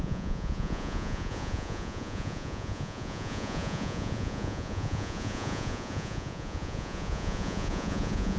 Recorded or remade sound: remade